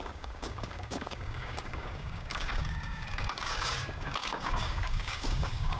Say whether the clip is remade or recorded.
remade